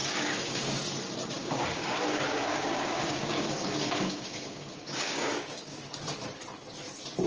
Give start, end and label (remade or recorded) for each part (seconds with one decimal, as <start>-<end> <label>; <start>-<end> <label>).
0.0-0.8 remade; 0.8-1.4 recorded; 1.4-5.8 remade; 5.8-7.3 recorded